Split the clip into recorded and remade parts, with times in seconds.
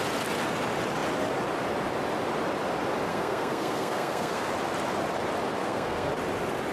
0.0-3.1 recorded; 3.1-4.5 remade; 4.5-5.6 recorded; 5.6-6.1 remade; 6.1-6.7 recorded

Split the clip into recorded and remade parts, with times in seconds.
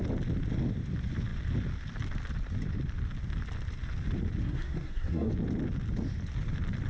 0.0-4.4 recorded; 4.4-5.3 remade; 5.3-6.9 recorded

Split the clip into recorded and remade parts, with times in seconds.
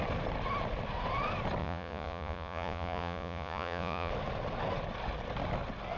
0.0-1.6 recorded; 1.6-4.1 remade; 4.1-6.0 recorded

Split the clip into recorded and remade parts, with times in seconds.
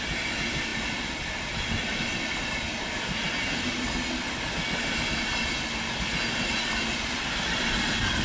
0.0-8.2 recorded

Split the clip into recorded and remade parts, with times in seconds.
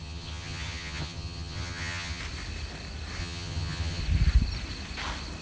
0.0-2.2 remade; 2.2-3.2 recorded; 3.2-4.0 remade; 4.0-5.4 recorded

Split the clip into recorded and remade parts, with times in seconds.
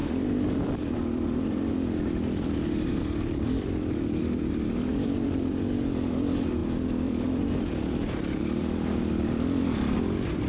0.0-10.5 remade